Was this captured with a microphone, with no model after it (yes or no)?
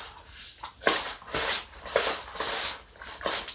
yes